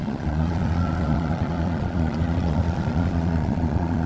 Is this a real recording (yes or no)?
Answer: no